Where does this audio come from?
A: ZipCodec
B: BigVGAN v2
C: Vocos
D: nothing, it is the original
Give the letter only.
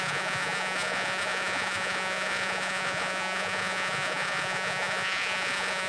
C